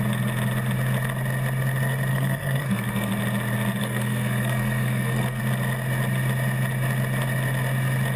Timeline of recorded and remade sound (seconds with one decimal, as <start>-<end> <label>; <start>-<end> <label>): 0.0-2.1 recorded; 2.1-3.1 remade; 3.1-3.8 recorded; 3.8-5.4 remade; 5.4-8.2 recorded